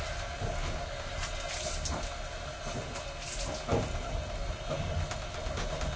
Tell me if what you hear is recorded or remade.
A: recorded